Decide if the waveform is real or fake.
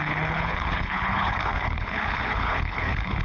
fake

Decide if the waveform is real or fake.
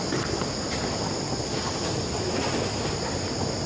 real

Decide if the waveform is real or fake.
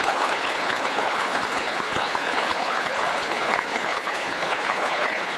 fake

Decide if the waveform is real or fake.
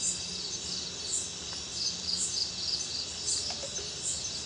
real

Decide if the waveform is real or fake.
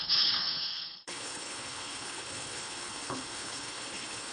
fake